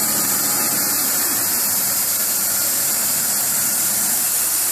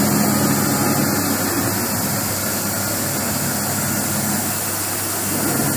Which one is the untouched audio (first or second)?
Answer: second